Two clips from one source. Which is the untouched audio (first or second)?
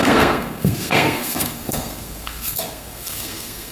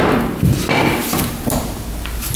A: second